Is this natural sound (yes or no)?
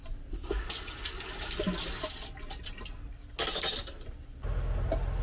yes